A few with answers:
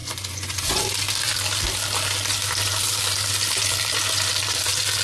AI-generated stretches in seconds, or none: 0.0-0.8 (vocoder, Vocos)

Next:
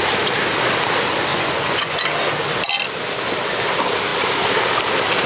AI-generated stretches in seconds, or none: 1.3-2.0 (vocoder, Vocos)

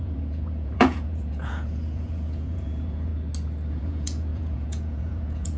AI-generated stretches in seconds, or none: 0.0-3.1 (vocoder, Vocos); 3.7-5.6

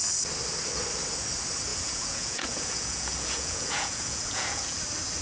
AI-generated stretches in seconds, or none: 1.7-4.8 (vocoder, Vocos)

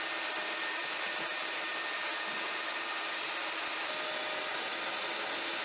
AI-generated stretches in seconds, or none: none

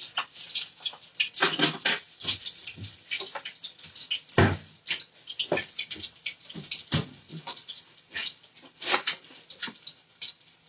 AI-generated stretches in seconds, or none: 7.3-7.8 (vocoder, Vocos)